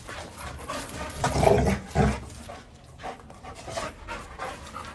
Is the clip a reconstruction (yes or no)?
no